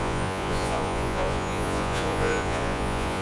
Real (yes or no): no